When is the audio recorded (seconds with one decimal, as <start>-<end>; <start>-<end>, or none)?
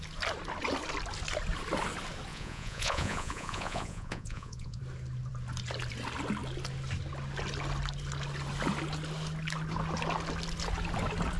0.0-2.3; 4.8-11.4